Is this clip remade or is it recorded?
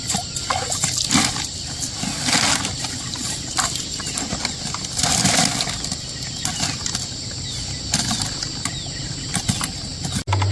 recorded